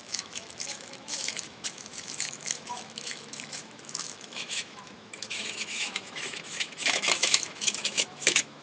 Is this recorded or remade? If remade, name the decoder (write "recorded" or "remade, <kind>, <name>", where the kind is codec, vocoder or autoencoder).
remade, autoencoder, DAC-VAE